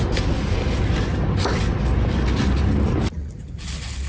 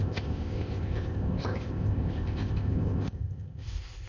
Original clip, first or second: first